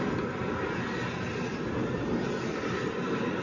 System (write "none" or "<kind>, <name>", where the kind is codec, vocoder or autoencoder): none